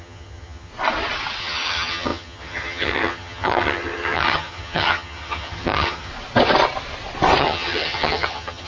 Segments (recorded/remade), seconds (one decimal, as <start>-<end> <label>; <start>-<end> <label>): 0.0-0.7 remade; 0.7-1.4 recorded; 1.4-6.1 remade; 6.1-7.4 recorded; 7.4-8.7 remade